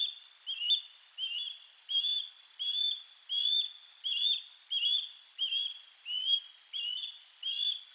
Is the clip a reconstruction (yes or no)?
no